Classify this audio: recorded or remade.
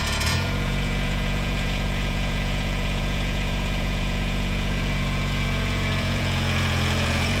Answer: remade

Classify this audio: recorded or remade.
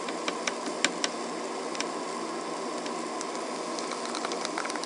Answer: recorded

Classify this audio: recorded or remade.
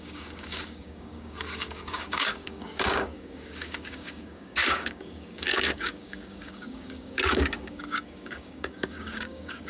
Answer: remade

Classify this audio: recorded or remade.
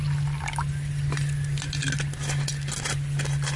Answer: recorded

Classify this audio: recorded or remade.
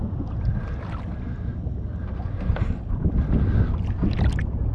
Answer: recorded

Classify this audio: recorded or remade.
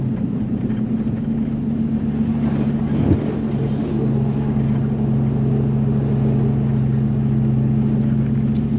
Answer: recorded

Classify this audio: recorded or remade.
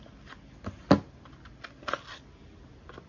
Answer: recorded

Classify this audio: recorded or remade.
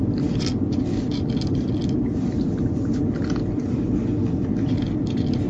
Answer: recorded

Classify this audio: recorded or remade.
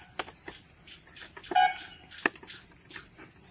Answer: recorded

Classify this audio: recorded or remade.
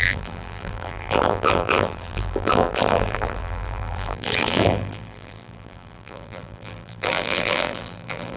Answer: remade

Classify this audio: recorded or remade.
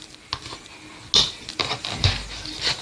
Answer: recorded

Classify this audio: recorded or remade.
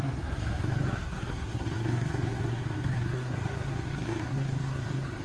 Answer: remade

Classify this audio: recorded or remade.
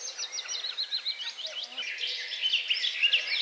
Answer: recorded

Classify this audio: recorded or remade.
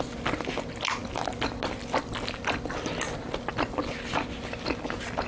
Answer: recorded